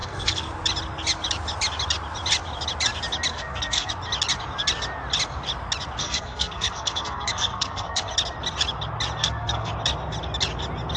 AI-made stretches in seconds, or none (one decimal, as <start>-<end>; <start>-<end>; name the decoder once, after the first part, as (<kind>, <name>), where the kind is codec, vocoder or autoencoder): 0.0-0.5 (codec, SNAC); 3.3-3.9; 6.0-8.0; 9.2-9.7